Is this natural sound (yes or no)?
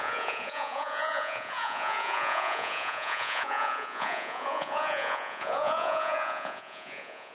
no